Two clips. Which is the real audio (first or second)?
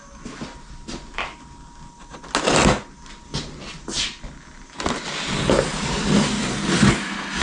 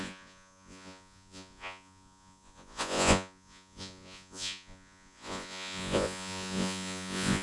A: first